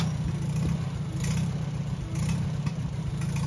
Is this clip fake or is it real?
real